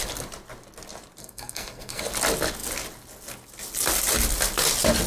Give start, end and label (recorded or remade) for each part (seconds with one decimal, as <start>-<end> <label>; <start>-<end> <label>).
0.0-1.2 recorded; 1.2-2.0 remade; 2.0-5.1 recorded